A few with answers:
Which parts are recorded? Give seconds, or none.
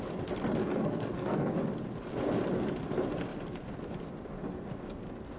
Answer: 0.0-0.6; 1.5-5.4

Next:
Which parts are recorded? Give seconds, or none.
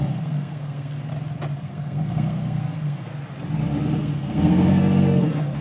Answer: 1.1-1.6; 3.1-4.0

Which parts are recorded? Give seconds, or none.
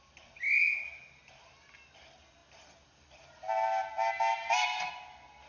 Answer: 0.0-5.5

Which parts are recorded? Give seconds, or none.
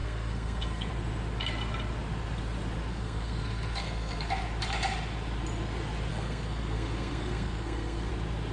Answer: 0.9-2.9; 4.3-6.1; 8.1-8.5